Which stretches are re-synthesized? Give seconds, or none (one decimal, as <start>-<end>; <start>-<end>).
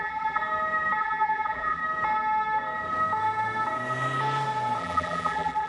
0.0-0.4; 1.0-1.8; 4.8-5.7